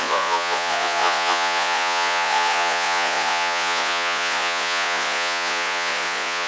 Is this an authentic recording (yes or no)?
no